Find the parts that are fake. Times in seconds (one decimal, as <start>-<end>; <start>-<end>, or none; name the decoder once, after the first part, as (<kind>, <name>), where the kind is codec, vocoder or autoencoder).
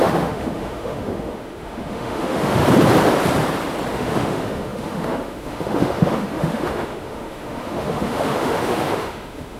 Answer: 0.0-2.6 (autoencoder, DAC-VAE); 3.9-9.6